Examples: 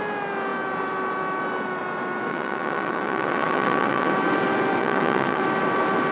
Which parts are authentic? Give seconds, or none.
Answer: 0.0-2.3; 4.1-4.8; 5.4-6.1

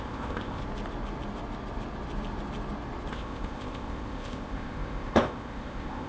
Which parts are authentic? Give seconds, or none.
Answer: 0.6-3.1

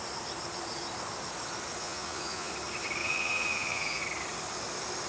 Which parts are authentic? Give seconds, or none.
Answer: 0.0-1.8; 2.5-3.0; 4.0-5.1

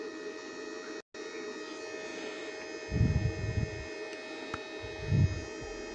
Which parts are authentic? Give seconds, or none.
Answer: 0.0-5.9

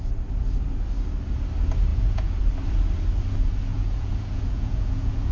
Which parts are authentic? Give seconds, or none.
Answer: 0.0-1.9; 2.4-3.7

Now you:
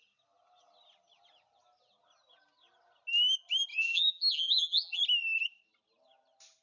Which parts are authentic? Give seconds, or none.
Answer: 0.0-3.7; 5.0-6.6

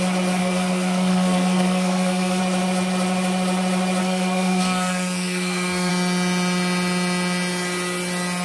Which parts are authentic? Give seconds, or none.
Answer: 0.0-0.4; 2.4-4.0; 5.9-8.4